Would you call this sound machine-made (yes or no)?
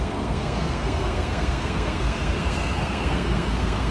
yes